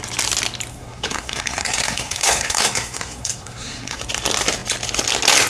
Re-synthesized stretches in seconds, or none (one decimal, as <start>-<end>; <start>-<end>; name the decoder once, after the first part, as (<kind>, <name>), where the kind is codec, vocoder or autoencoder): 0.7-4.0 (codec, SNAC)